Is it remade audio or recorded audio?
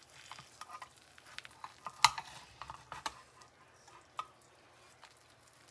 recorded